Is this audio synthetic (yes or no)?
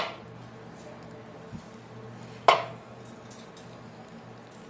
no